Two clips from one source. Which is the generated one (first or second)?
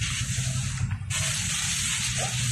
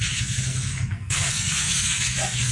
second